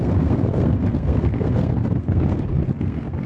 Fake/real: fake